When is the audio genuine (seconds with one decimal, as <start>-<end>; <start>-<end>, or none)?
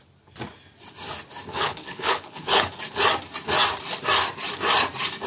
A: 0.0-1.5; 2.7-5.3